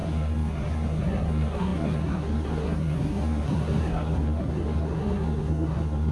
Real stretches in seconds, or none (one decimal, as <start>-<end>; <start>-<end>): none